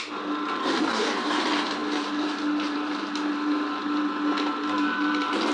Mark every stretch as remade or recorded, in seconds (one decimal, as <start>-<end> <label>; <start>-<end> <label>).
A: 0.0-0.6 recorded; 0.6-1.4 remade; 1.4-5.5 recorded